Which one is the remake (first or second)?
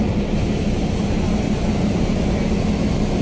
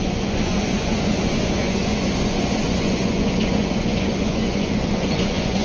second